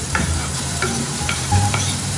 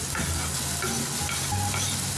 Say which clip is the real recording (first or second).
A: second